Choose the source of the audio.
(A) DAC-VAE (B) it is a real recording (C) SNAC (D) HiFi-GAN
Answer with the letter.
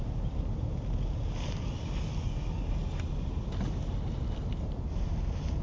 B